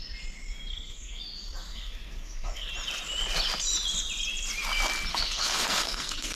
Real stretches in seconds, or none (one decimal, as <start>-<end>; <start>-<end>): 0.0-0.7; 1.2-1.7; 2.7-5.1